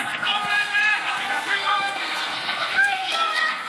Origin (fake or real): fake